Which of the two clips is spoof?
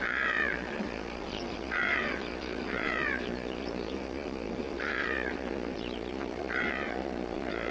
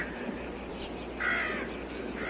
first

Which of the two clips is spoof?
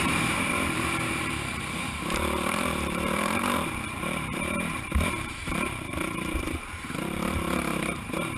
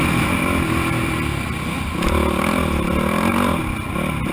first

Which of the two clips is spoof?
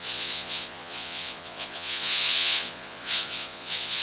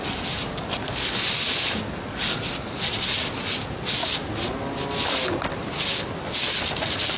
first